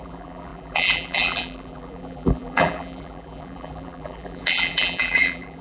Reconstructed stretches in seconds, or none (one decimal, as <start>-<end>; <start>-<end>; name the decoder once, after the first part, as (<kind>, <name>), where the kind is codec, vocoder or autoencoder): 0.0-5.6 (vocoder, BigVGAN v2)